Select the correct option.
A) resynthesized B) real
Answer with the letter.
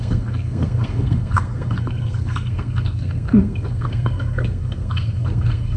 A